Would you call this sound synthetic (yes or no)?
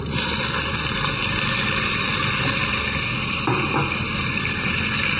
no